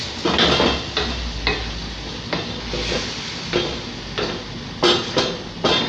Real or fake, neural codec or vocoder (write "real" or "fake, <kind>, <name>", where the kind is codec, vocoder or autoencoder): real